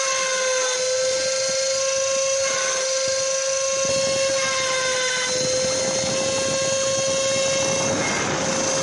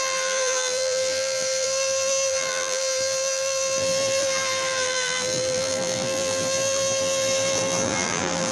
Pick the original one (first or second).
first